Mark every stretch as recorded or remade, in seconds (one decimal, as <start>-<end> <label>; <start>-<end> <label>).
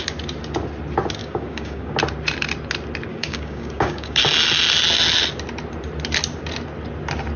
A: 0.0-1.2 recorded; 1.2-1.9 remade; 1.9-3.1 recorded; 3.1-4.2 remade; 4.2-7.4 recorded